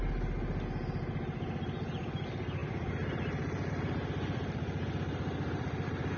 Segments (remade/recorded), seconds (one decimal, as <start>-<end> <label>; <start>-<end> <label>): 0.0-6.2 recorded